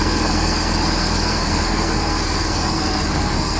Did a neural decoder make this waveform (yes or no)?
yes